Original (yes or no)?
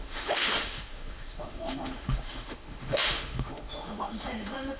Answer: no